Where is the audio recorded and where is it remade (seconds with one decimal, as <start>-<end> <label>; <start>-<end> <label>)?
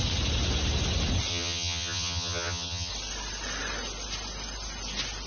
0.0-1.3 recorded; 1.3-2.9 remade; 2.9-5.3 recorded